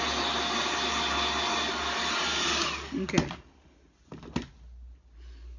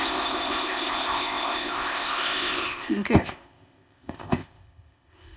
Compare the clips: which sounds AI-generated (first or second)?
second